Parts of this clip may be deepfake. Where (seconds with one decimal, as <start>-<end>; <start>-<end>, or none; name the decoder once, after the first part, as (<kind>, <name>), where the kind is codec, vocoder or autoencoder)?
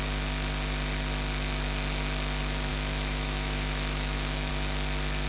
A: 2.7-4.5 (autoencoder, DAC-VAE)